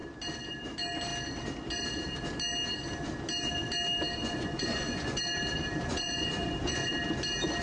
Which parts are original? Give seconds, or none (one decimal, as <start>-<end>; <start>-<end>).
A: 0.0-4.2; 5.2-5.9; 6.9-7.6